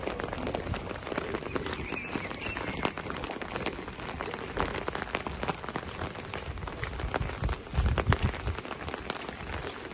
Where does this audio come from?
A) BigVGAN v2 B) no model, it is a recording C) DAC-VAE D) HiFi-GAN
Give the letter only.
B